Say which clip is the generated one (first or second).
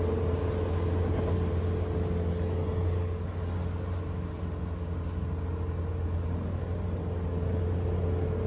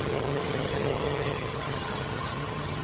second